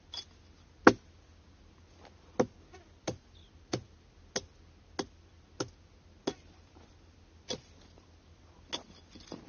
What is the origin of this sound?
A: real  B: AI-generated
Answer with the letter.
A